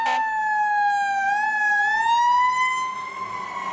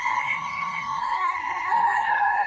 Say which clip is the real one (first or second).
first